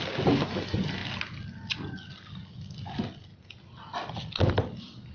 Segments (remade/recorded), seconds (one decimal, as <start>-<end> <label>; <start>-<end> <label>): 0.0-5.1 recorded

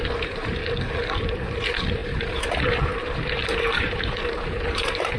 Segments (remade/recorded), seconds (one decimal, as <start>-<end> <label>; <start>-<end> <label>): 0.0-0.6 remade; 0.6-1.2 recorded; 1.2-5.2 remade

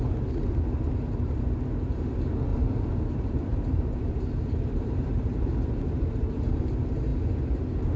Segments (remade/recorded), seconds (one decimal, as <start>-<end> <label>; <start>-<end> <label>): 0.0-2.5 recorded; 2.5-6.5 remade; 6.5-8.0 recorded